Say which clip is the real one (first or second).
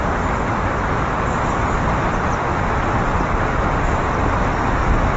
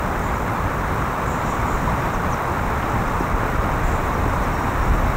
first